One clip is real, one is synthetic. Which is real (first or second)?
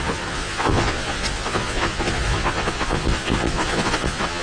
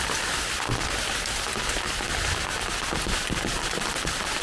second